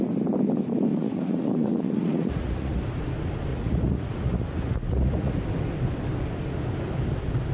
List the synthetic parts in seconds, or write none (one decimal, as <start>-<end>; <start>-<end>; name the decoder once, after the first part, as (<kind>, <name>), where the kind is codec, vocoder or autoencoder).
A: 0.9-2.8 (vocoder, Vocos); 3.5-5.3